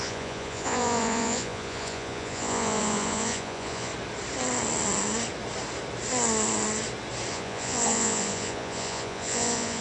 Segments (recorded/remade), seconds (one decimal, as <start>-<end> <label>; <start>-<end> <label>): 0.0-3.9 remade; 3.9-7.3 recorded; 7.3-9.8 remade